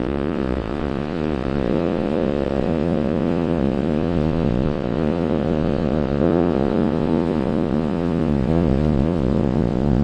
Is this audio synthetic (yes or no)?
yes